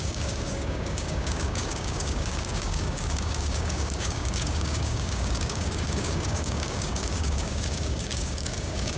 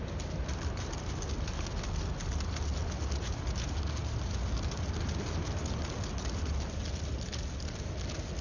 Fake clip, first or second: first